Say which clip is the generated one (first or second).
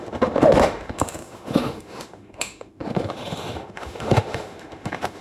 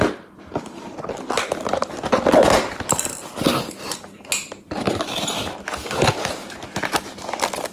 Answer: first